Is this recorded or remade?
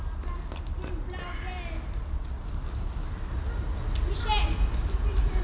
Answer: recorded